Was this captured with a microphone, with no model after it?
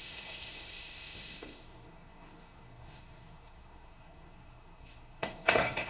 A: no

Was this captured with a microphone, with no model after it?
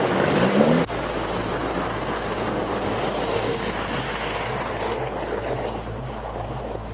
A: yes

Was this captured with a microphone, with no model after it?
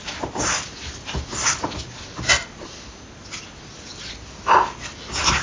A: yes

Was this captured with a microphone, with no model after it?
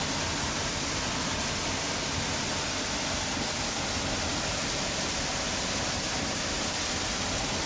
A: yes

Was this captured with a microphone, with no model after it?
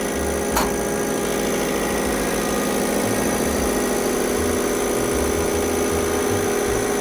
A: yes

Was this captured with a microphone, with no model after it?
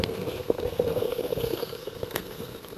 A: no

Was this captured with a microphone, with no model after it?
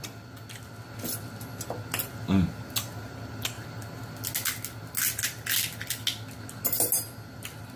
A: yes